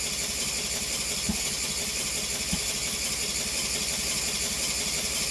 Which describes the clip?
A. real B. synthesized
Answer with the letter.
A